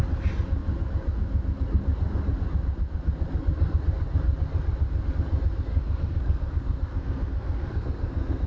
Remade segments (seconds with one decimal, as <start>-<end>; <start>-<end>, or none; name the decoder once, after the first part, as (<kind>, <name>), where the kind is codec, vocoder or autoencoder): 5.7-8.5 (codec, SNAC)